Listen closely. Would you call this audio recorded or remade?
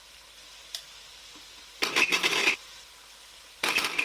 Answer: recorded